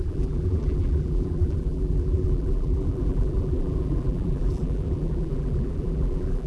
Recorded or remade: remade